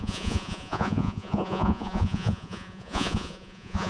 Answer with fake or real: fake